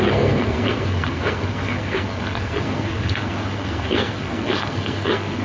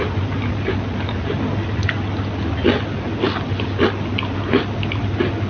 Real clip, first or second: second